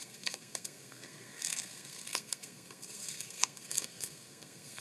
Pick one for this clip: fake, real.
fake